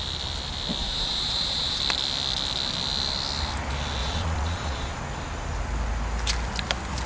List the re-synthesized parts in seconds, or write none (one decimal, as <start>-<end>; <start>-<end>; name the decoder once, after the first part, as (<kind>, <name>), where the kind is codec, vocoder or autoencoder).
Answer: 0.8-1.8 (vocoder, Vocos); 4.0-5.0